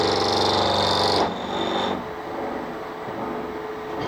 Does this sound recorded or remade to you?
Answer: recorded